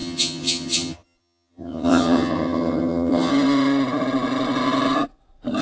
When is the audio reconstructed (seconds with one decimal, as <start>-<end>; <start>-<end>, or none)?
0.0-3.3